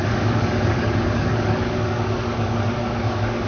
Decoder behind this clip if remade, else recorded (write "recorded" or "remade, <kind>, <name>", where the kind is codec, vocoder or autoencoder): remade, codec, DAC